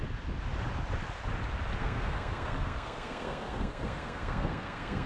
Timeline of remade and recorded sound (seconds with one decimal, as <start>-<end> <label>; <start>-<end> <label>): 0.0-1.8 recorded; 1.8-5.1 remade